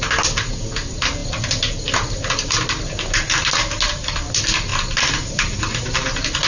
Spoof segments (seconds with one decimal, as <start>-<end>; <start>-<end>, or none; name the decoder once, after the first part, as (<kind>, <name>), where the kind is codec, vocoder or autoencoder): 4.7-6.5 (vocoder, BigVGAN v2)